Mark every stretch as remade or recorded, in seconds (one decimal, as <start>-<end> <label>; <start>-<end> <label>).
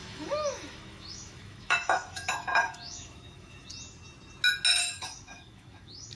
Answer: 0.0-3.7 remade; 3.7-4.7 recorded; 4.7-6.1 remade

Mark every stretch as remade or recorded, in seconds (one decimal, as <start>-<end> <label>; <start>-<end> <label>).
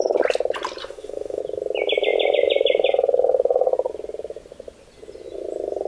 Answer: 0.0-0.8 recorded; 0.8-1.4 remade; 1.4-5.9 recorded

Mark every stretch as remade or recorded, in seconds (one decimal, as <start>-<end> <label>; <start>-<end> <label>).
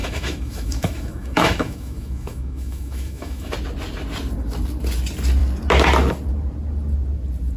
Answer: 0.0-3.5 remade; 3.5-7.6 recorded